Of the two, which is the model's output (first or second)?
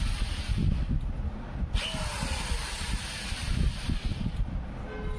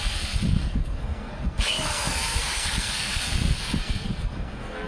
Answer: second